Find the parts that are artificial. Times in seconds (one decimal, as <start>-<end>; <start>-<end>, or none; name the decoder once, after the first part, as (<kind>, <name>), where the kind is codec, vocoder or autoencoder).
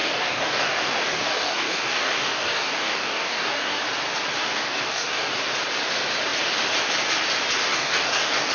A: 0.0-3.8 (codec, DAC); 4.4-5.3; 7.6-8.5